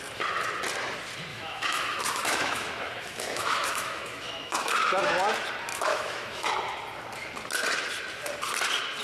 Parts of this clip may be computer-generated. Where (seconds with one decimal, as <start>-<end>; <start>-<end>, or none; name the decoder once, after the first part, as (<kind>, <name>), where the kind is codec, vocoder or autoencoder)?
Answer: 1.3-5.0 (autoencoder, DAC-VAE); 5.7-6.5